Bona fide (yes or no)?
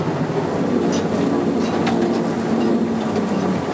yes